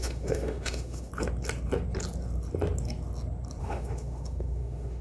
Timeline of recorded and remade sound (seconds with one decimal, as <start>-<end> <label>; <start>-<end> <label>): 0.0-1.1 remade; 1.1-3.6 recorded; 3.6-5.0 remade